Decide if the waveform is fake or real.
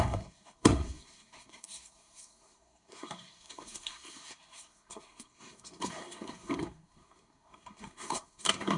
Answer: fake